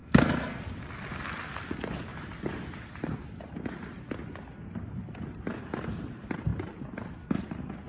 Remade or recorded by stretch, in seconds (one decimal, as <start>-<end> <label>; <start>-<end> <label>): 0.0-0.6 remade; 0.6-7.9 recorded